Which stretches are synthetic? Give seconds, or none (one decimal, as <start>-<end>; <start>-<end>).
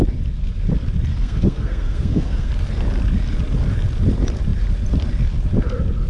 1.1-2.5